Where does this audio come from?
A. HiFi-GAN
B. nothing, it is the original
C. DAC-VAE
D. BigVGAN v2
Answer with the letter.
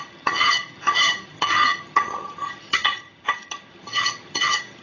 A